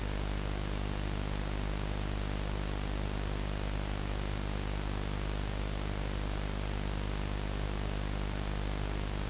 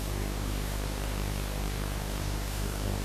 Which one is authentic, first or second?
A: first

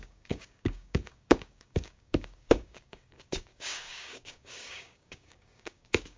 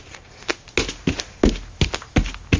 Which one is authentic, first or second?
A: second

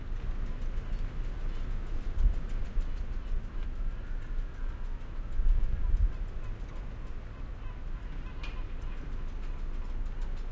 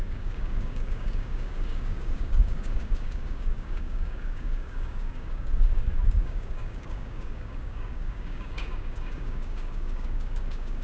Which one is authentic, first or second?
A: first